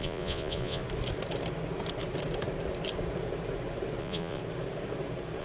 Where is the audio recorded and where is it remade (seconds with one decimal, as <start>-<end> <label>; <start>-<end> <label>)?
0.0-0.8 remade; 0.8-4.0 recorded; 4.0-4.4 remade; 4.4-5.4 recorded